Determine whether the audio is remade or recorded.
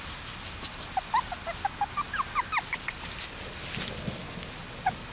recorded